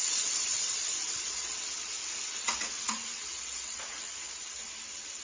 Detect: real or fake fake